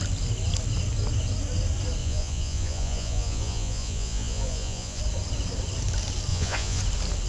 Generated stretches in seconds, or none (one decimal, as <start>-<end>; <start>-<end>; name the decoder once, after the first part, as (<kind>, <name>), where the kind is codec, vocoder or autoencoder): 2.0-5.0 (vocoder, Vocos); 6.3-6.8